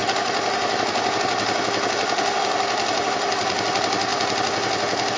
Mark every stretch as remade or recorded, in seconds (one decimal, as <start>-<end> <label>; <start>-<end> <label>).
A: 0.0-5.2 recorded